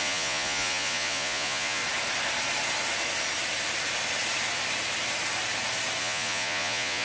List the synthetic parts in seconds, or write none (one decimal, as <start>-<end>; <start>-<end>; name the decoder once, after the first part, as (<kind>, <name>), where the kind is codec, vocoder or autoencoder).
0.0-1.8 (vocoder, Vocos); 6.0-7.0